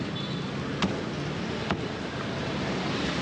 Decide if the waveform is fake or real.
real